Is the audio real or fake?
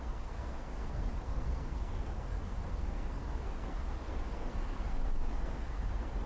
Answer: fake